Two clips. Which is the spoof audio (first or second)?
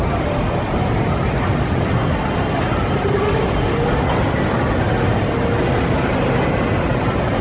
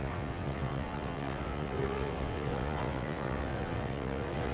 second